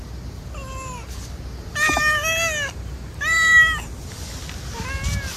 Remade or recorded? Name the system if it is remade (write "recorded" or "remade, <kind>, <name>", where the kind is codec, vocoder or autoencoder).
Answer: recorded